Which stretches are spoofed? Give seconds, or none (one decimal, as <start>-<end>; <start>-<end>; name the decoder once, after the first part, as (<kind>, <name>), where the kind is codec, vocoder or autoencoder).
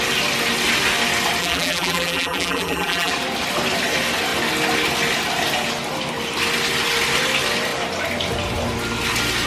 1.4-3.1 (vocoder, BigVGAN v2)